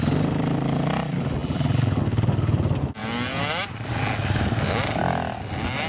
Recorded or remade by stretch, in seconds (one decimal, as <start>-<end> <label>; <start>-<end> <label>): 0.0-1.4 recorded; 1.4-2.0 remade; 2.0-5.9 recorded